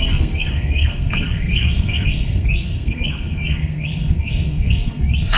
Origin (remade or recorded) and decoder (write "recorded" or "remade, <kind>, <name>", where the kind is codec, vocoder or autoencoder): remade, codec, SNAC